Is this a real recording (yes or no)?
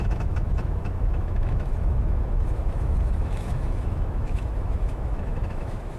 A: no